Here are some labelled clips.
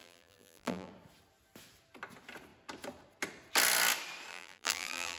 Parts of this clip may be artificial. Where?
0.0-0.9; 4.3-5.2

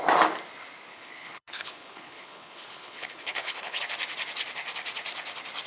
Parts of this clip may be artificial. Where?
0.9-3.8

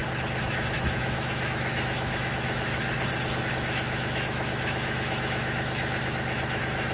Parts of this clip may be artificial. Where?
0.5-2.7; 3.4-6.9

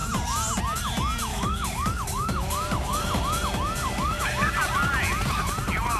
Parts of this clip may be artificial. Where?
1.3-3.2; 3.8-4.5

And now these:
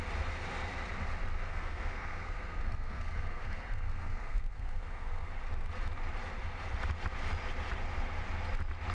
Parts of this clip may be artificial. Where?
1.5-5.3